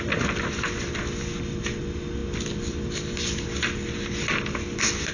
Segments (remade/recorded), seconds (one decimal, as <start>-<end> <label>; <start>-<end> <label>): 0.0-5.1 recorded